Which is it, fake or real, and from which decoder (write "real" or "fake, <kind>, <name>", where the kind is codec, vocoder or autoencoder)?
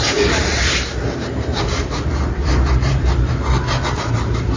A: fake, vocoder, BigVGAN v2